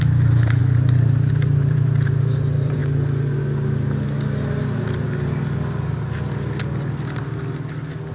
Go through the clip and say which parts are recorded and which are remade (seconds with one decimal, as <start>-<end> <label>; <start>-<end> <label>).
0.0-2.8 remade; 2.8-8.1 recorded